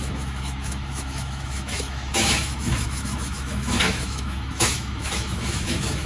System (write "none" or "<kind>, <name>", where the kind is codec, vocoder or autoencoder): autoencoder, DAC-VAE